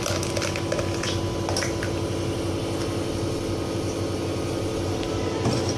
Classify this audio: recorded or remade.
recorded